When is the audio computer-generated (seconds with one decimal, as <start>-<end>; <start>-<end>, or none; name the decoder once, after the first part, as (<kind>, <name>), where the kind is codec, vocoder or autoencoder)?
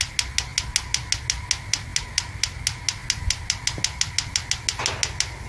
none